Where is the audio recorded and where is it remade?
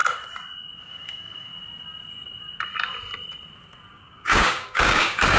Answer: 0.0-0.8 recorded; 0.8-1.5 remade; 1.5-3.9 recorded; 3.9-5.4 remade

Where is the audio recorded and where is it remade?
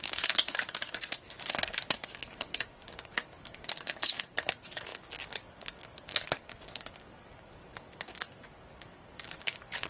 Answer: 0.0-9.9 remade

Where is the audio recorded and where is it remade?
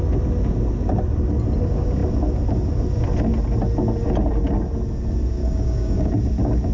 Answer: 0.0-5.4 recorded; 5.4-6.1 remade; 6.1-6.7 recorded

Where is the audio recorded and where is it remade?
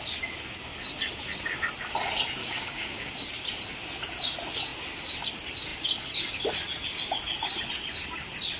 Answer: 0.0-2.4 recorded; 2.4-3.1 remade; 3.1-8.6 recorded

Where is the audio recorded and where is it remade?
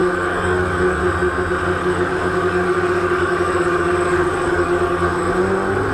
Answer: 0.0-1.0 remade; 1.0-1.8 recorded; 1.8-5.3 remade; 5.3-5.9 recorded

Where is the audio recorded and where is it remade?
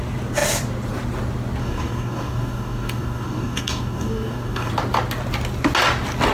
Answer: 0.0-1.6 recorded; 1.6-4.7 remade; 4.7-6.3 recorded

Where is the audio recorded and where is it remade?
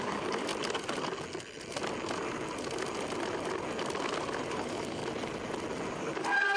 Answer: 0.0-0.5 remade; 0.5-4.5 recorded; 4.5-5.0 remade; 5.0-5.9 recorded; 5.9-6.6 remade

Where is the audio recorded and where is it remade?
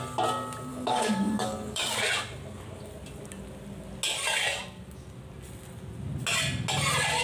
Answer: 0.0-0.7 recorded; 0.7-2.0 remade; 2.0-7.2 recorded